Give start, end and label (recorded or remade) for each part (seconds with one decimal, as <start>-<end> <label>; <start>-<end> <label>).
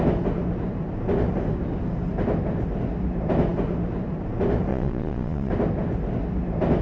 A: 0.0-4.7 recorded; 4.7-5.5 remade; 5.5-6.8 recorded